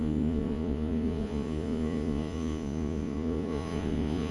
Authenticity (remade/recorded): remade